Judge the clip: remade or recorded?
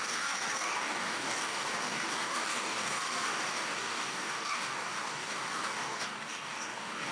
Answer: remade